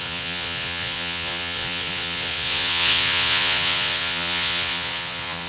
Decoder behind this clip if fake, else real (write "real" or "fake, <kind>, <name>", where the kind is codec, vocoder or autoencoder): fake, vocoder, Vocos